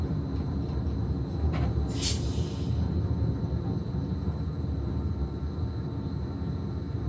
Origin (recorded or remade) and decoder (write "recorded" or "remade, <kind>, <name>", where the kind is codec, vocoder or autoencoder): recorded